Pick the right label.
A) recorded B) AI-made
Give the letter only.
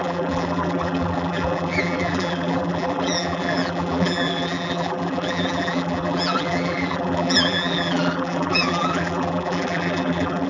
B